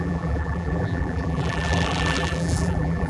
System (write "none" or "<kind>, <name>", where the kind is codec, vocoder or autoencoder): vocoder, BigVGAN v2